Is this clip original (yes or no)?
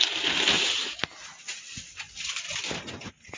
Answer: yes